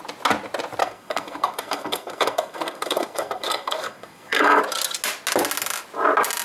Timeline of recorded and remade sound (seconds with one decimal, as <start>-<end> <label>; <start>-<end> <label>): 0.0-0.8 recorded; 0.8-4.6 remade; 4.6-6.4 recorded